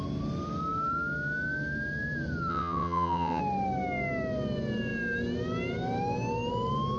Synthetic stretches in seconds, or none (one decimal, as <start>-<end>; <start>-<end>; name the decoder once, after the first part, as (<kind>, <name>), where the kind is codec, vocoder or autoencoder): 2.5-3.4 (vocoder, WaveNeXt)